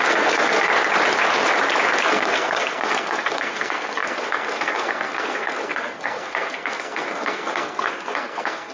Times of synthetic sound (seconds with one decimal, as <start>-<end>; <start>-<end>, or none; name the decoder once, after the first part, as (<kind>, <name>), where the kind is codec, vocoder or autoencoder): 0.0-0.7 (codec, SNAC); 2.0-8.7